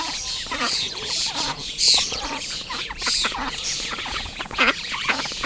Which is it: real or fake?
fake